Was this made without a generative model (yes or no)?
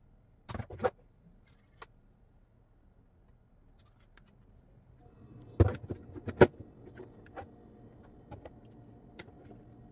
yes